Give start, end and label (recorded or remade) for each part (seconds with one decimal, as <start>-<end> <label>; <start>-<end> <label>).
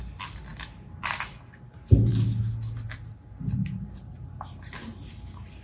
0.0-5.6 recorded